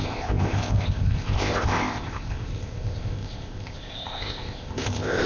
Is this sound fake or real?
fake